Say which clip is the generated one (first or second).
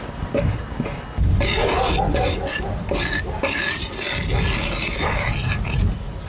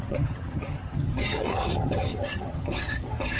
second